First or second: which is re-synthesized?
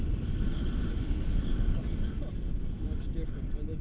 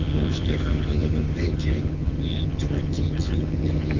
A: second